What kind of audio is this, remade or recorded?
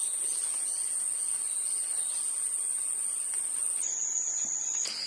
recorded